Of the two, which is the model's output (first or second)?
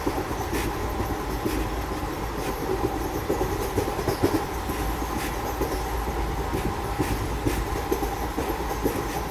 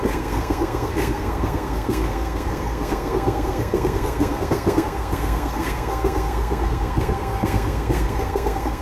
second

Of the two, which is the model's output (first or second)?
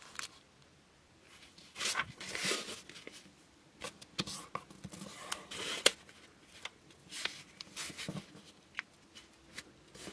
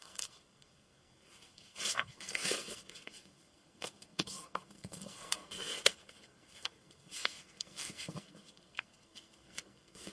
second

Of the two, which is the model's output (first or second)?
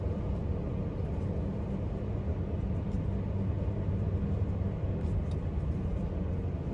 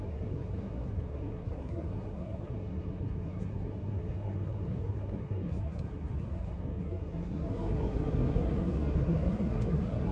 second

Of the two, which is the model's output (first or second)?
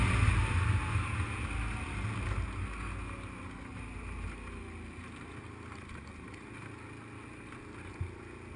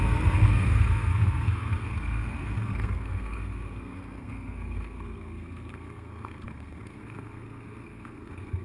second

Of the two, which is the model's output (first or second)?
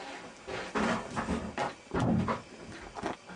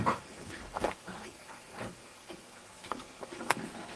second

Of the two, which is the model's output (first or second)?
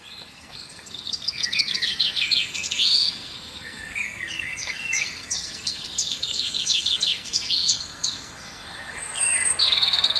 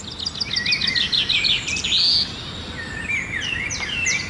first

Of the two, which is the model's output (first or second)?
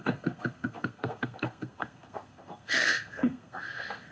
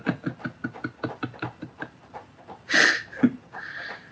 first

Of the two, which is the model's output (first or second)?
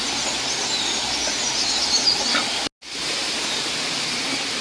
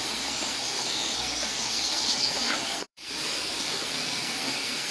second